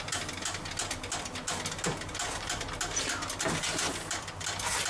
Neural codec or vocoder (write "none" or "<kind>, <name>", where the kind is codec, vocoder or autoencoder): none